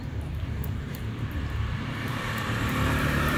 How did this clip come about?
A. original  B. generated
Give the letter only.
B